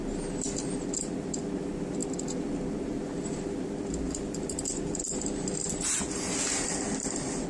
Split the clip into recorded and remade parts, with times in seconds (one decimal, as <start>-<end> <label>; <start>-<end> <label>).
0.0-7.5 recorded